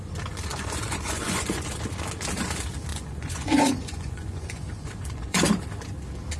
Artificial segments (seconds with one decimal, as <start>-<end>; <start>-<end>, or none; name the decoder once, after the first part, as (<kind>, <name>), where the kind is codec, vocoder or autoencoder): 0.5-1.7 (vocoder, Vocos); 2.9-5.4